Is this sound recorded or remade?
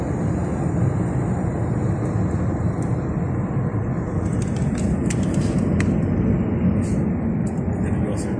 recorded